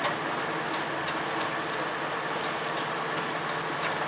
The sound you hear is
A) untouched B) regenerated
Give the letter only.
A